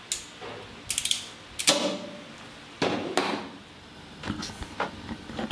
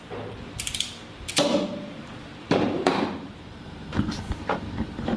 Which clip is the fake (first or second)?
second